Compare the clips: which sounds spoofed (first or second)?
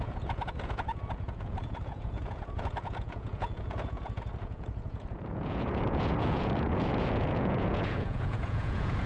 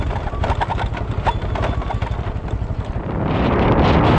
first